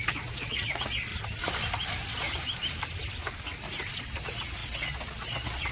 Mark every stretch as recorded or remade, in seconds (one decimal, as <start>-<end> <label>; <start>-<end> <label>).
0.0-1.1 remade; 1.1-4.0 recorded; 4.0-5.7 remade